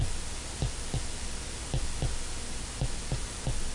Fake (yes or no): no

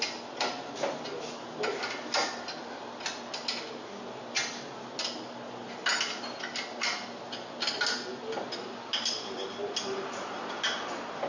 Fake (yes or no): no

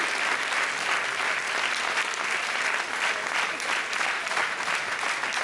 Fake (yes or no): no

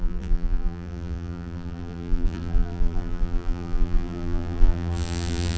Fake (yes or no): yes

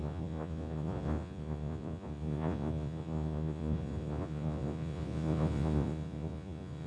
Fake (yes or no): yes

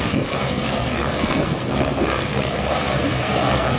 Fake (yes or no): yes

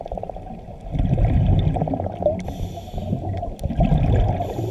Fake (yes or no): no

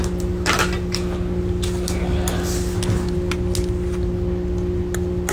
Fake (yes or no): no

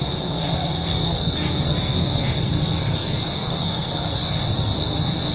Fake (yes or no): yes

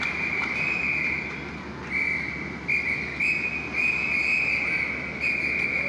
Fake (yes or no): no